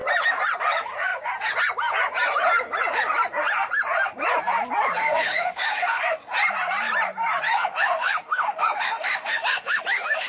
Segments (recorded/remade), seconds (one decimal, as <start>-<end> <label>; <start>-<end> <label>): 0.0-5.0 recorded; 5.0-6.0 remade; 6.0-7.5 recorded; 7.5-10.3 remade